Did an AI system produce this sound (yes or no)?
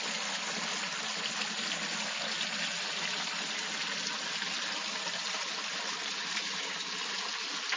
no